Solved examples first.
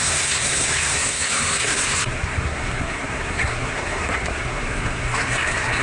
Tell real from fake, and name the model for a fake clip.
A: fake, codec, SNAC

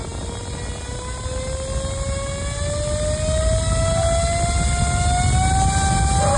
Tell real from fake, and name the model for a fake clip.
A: real